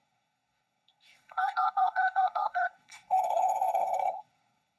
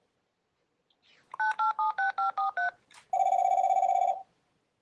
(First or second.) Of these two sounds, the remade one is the first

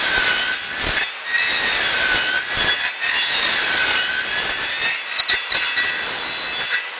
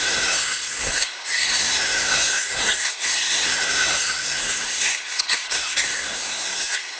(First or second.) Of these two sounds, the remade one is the second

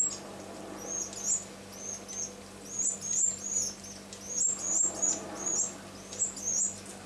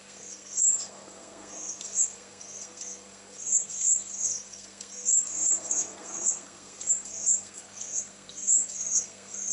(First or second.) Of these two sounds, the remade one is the second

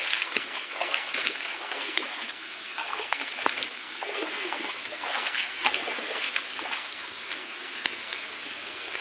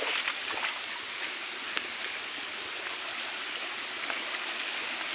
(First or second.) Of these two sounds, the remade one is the first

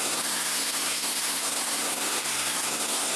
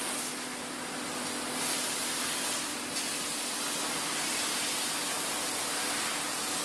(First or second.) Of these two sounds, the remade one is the first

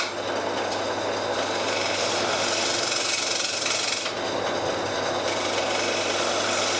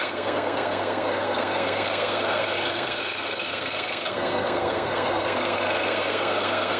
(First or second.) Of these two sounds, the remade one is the second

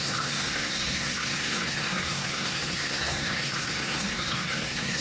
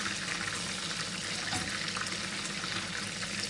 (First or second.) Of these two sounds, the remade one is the first